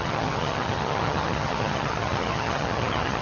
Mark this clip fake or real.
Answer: fake